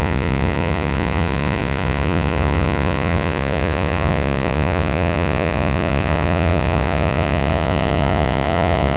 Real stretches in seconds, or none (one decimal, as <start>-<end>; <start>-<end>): none